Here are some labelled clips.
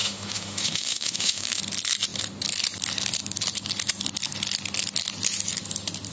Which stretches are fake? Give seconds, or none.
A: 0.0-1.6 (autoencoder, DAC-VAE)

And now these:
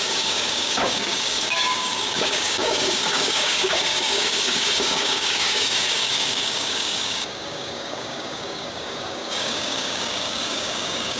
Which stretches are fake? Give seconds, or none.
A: 0.0-11.2 (codec, DAC)

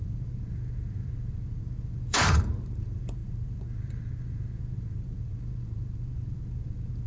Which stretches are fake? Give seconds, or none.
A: 0.0-7.1 (vocoder, BigVGAN v2)